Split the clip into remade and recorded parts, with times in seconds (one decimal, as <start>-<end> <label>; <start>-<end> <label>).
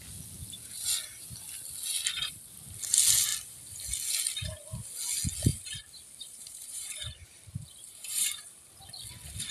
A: 0.0-5.5 recorded; 5.5-8.7 remade; 8.7-9.5 recorded